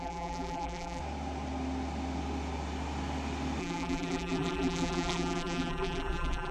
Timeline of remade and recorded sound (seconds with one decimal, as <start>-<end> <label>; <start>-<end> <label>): 0.0-1.0 remade; 1.0-3.6 recorded; 3.6-6.5 remade